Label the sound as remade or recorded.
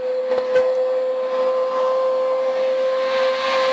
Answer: recorded